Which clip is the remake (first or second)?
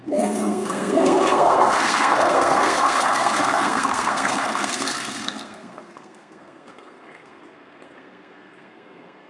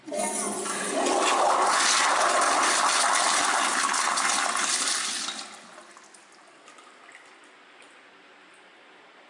first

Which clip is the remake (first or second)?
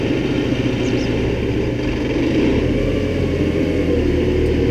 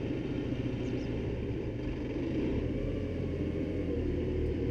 second